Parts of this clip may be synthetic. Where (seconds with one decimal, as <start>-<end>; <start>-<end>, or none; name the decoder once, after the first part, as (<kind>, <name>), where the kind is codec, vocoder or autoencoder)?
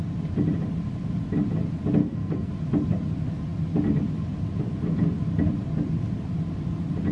2.0-2.5 (codec, SNAC)